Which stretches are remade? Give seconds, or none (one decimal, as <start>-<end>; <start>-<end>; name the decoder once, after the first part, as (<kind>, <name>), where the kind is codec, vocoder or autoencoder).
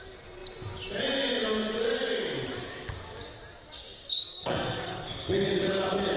4.1-5.5 (codec, SNAC)